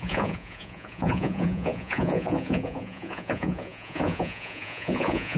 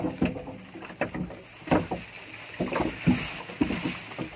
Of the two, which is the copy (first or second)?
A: first